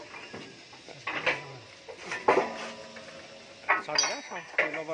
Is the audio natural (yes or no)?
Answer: yes